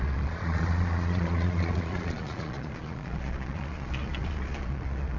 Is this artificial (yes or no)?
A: yes